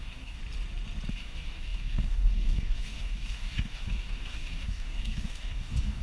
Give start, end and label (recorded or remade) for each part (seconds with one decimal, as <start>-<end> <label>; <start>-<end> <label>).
0.0-0.4 remade; 0.4-1.1 recorded; 1.1-6.0 remade